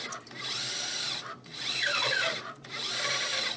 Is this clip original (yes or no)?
yes